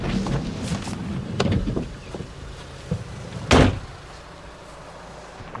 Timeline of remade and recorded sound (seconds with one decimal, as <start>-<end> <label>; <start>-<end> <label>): 0.0-1.1 recorded; 1.1-3.0 remade; 3.0-5.6 recorded